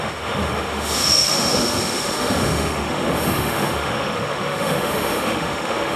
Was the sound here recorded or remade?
remade